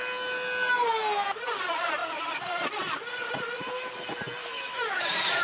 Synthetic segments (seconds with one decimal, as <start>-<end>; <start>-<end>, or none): 4.4-5.0